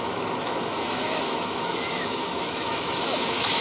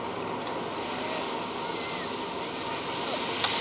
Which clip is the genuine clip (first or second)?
second